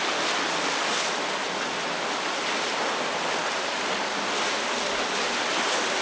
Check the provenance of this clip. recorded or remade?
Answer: recorded